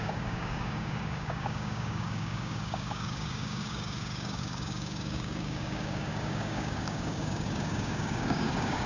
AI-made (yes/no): yes